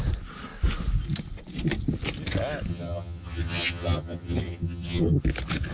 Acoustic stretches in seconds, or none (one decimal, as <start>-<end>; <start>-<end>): 0.0-2.7; 5.2-5.7